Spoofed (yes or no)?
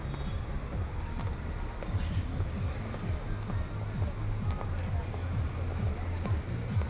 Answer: no